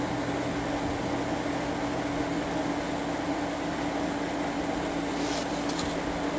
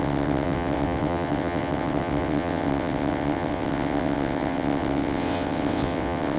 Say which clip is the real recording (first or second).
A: first